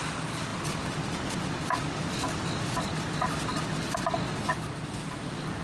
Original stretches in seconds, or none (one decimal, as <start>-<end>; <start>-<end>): 0.0-5.6